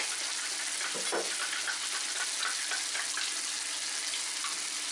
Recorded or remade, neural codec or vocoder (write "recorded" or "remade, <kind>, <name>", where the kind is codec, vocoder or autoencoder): recorded